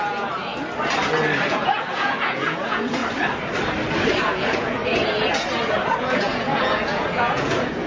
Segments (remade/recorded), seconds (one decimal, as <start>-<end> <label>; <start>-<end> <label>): 0.0-0.5 remade; 0.5-1.5 recorded; 1.5-3.0 remade; 3.0-4.2 recorded; 4.2-4.8 remade; 4.8-6.0 recorded; 6.0-7.9 remade

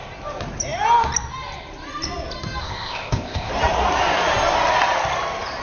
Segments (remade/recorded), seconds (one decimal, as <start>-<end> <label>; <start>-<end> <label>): 0.0-2.6 recorded; 2.6-3.5 remade; 3.5-5.6 recorded